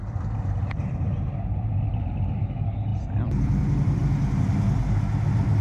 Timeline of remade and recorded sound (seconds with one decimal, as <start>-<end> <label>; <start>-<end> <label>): 0.0-1.9 remade; 1.9-2.9 recorded; 2.9-4.0 remade; 4.0-5.6 recorded